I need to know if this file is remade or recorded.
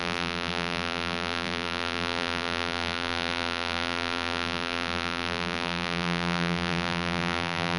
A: remade